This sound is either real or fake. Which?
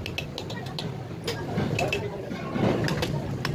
real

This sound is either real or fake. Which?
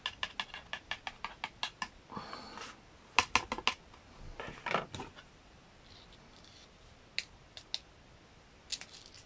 real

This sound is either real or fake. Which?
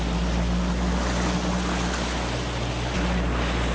real